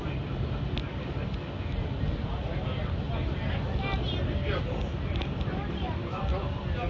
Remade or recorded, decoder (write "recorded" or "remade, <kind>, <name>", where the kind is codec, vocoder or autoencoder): recorded